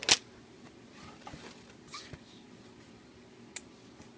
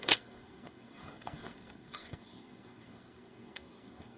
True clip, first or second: first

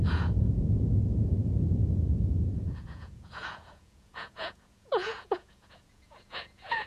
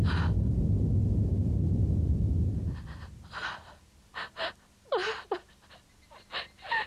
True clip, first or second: second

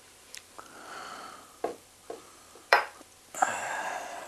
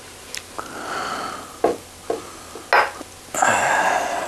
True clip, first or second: second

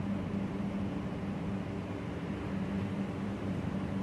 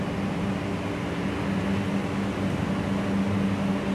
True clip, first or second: second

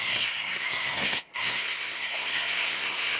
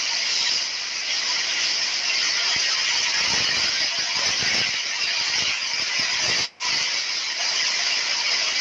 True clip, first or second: second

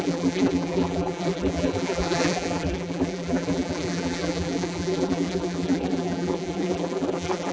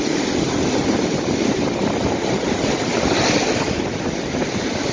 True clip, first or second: second